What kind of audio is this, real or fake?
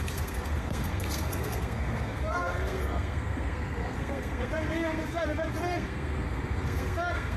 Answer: fake